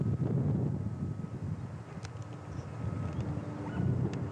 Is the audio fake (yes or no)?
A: no